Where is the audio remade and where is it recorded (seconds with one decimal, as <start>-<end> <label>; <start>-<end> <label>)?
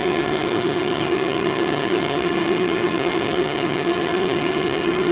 0.0-5.1 remade